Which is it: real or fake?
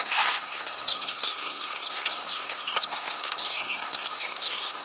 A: fake